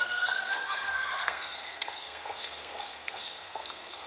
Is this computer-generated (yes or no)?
yes